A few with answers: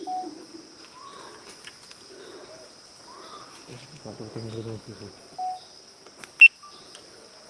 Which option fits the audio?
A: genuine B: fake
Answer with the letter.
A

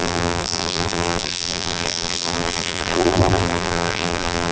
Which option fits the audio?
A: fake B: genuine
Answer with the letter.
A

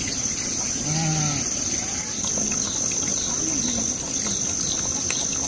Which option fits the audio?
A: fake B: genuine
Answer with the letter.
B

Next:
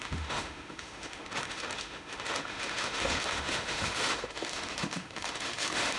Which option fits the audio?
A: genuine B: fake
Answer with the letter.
B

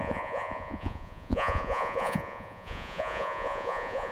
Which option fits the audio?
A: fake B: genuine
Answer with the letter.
A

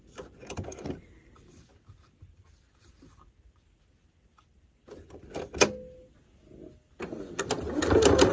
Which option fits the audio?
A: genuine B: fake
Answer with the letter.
A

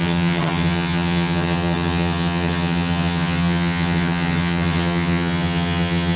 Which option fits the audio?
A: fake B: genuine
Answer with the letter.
A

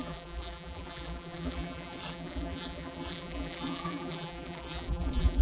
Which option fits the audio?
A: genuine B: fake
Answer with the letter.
B